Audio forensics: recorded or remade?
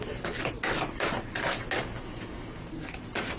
recorded